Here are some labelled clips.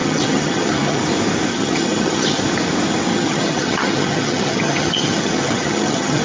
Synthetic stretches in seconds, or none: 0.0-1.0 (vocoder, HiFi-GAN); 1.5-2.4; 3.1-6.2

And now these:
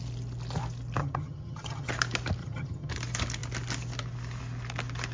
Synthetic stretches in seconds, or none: 1.0-1.9 (vocoder, HiFi-GAN); 2.4-2.9

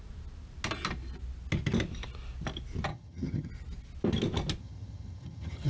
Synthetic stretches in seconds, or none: 2.9-3.5 (vocoder, HiFi-GAN); 4.6-5.7

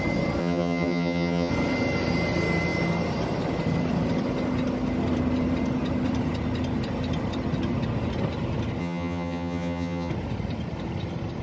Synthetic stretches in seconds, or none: 0.4-1.5 (vocoder, HiFi-GAN); 8.8-10.1

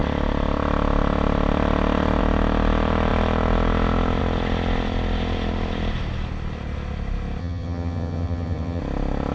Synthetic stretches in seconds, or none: 7.4-8.8 (vocoder, HiFi-GAN)

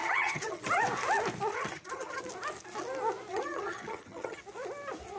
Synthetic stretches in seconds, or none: 0.0-0.6 (vocoder, HiFi-GAN); 1.5-2.2; 3.3-4.4